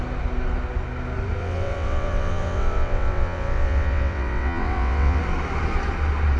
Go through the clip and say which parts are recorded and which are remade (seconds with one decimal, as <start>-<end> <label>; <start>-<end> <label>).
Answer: 0.0-1.4 recorded; 1.4-5.2 remade; 5.2-6.4 recorded